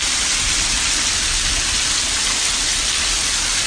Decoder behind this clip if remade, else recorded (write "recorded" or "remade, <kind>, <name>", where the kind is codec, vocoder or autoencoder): recorded